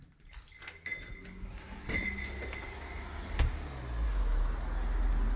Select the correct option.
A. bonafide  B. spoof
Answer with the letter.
A